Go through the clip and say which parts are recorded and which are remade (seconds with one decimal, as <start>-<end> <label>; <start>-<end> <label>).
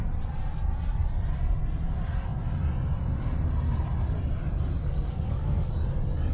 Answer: 0.0-4.8 recorded; 4.8-5.7 remade; 5.7-6.3 recorded